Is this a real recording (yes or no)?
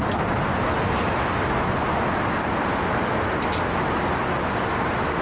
yes